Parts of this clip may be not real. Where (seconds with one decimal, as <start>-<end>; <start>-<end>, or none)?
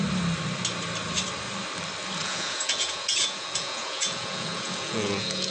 2.2-5.5